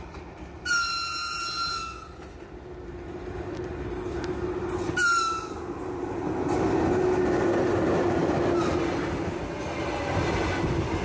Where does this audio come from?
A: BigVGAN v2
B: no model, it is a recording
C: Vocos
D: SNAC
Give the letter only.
B